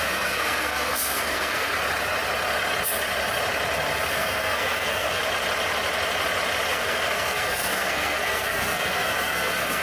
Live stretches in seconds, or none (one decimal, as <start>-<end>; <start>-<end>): 1.7-4.1; 5.2-6.7